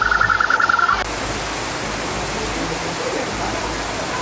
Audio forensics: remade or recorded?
recorded